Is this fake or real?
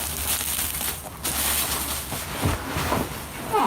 real